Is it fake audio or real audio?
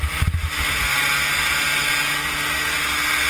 real